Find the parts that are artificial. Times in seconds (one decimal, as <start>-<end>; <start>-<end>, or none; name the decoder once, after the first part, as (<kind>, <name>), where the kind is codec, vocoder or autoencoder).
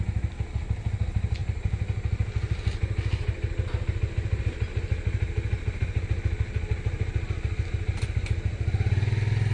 none